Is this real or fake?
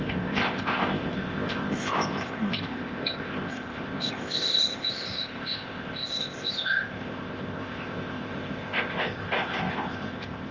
fake